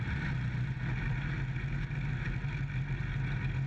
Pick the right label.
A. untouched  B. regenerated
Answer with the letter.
A